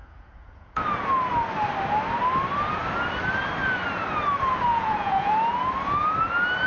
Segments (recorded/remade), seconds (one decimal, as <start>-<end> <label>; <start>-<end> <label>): 0.0-0.8 remade; 0.8-4.7 recorded; 4.7-5.3 remade; 5.3-6.7 recorded